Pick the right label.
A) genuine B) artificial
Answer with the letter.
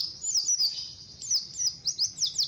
A